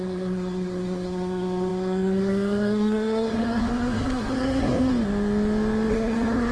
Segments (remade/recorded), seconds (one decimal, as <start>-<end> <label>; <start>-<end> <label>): 0.0-4.9 remade; 4.9-5.9 recorded; 5.9-6.5 remade